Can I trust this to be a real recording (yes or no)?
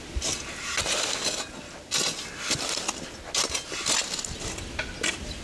yes